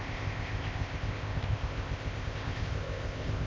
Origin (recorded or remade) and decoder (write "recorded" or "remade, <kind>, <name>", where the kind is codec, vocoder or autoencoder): remade, codec, ZipCodec